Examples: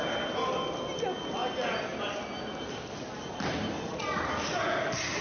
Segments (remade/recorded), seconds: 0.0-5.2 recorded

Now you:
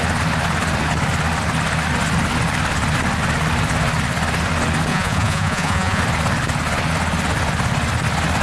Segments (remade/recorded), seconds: 0.0-4.9 recorded; 4.9-6.0 remade; 6.0-8.4 recorded

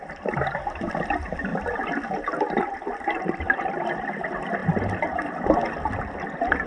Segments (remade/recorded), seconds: 0.0-6.7 recorded

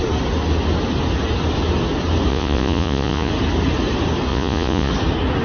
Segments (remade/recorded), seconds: 0.0-2.3 recorded; 2.3-3.3 remade; 3.3-4.3 recorded; 4.3-4.9 remade; 4.9-5.4 recorded

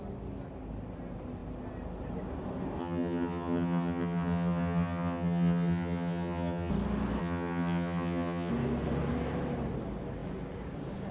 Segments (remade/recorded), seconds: 0.0-2.8 recorded; 2.8-6.7 remade; 6.7-7.2 recorded; 7.2-8.5 remade; 8.5-11.1 recorded

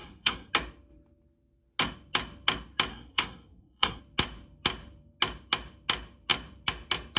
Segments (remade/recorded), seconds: 0.0-0.5 remade; 0.5-2.9 recorded; 2.9-4.0 remade; 4.0-7.2 recorded